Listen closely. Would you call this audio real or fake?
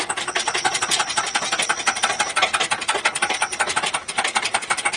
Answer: real